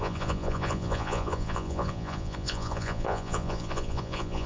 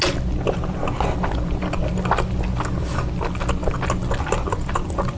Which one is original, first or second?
second